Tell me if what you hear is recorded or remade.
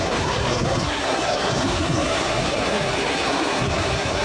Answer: remade